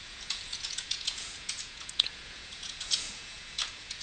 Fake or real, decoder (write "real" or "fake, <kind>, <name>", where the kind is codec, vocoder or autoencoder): fake, vocoder, Vocos